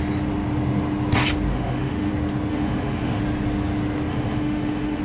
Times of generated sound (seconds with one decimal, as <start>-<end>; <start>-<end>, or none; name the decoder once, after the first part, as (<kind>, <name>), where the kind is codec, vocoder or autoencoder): 1.5-2.1 (autoencoder, DAC-VAE); 2.5-3.2; 4.1-5.0